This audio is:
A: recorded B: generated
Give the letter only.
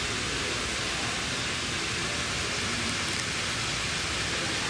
A